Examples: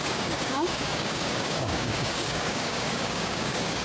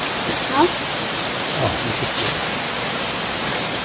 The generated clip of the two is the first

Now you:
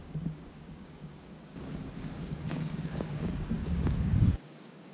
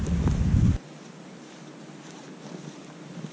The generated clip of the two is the first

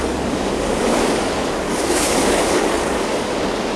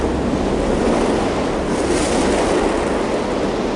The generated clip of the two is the first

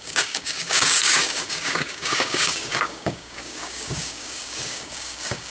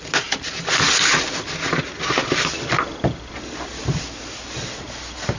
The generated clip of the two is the first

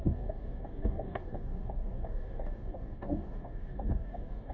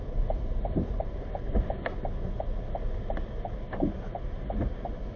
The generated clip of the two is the first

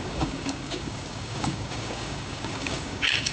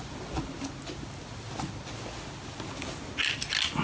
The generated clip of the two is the first